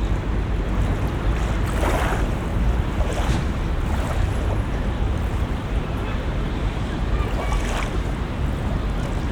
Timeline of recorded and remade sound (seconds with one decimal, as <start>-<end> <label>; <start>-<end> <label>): 0.0-2.5 recorded; 2.5-7.1 remade; 7.1-9.3 recorded